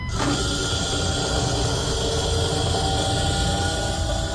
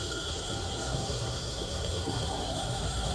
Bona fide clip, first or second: first